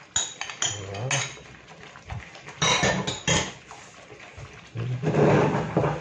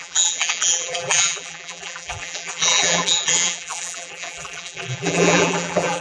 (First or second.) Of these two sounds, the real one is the first